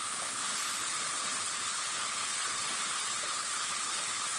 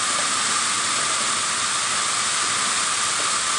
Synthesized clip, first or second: first